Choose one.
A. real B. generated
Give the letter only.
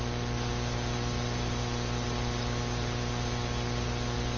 B